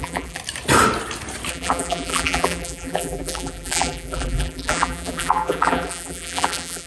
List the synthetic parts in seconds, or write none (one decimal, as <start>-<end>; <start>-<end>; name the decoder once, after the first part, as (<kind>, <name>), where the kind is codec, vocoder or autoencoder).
0.0-0.4 (vocoder, BigVGAN v2); 1.5-6.9